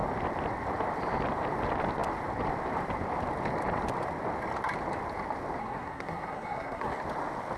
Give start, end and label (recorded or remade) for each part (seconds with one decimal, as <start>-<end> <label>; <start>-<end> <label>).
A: 0.0-5.6 recorded; 5.6-6.9 remade; 6.9-7.6 recorded